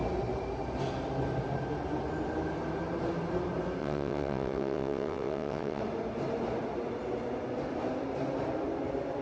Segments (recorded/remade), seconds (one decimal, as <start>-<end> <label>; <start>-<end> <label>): 0.0-3.8 recorded; 3.8-5.8 remade; 5.8-9.2 recorded